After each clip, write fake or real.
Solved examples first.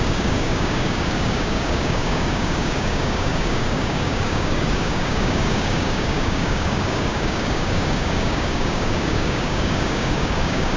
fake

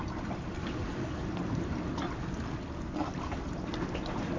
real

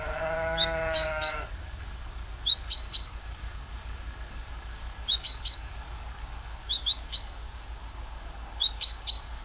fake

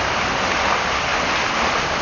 real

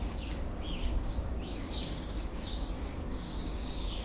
fake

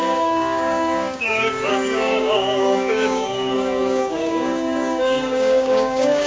fake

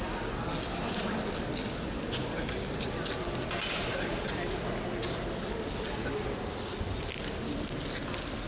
real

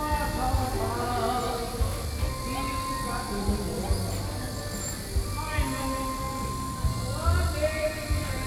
real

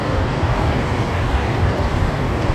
fake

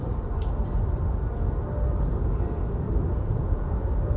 real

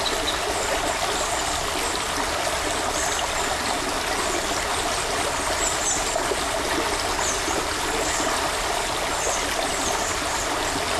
real